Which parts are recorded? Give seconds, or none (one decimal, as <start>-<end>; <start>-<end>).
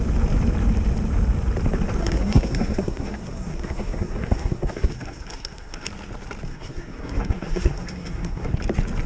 0.0-2.0; 5.9-6.5; 8.5-9.1